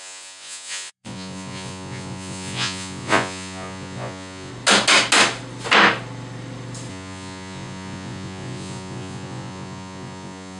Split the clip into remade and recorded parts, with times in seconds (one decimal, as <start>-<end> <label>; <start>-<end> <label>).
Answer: 0.0-4.5 remade; 4.5-6.9 recorded; 6.9-10.6 remade

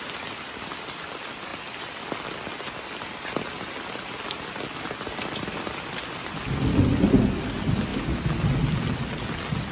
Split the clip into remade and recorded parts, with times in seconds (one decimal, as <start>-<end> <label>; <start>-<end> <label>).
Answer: 0.0-9.7 recorded